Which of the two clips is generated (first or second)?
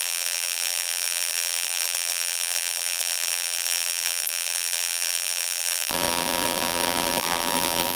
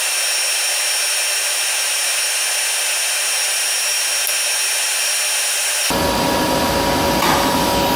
first